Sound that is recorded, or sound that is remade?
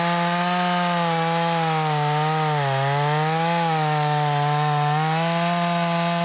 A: recorded